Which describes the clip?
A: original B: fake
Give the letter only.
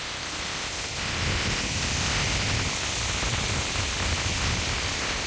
A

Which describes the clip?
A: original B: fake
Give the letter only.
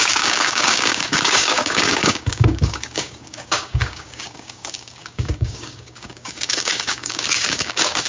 B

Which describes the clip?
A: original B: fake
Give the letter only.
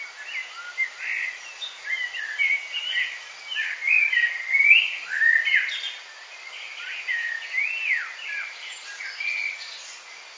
A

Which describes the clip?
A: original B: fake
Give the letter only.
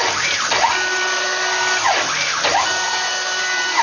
A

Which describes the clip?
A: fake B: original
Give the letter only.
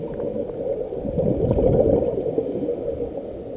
B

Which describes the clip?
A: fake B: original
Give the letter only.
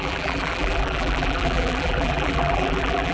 A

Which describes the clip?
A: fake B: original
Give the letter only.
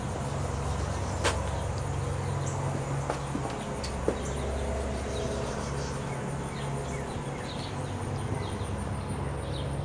B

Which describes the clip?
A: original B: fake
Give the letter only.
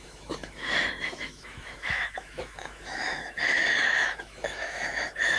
B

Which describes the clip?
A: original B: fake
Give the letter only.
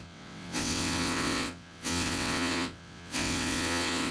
B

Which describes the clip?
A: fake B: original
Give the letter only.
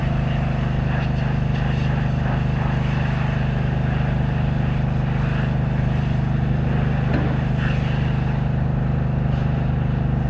B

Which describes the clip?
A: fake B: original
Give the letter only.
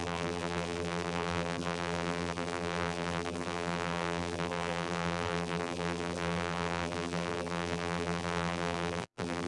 A